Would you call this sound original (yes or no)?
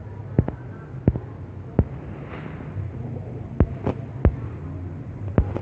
yes